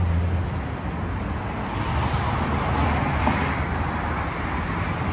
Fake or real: real